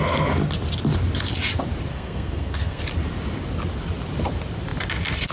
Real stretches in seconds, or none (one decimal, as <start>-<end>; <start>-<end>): 0.0-1.9; 2.8-5.3